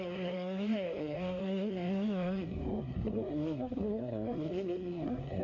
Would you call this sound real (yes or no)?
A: no